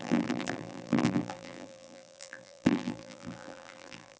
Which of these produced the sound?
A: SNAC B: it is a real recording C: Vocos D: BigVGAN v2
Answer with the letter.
D